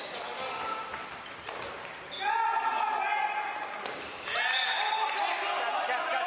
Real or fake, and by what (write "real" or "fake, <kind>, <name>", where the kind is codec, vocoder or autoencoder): real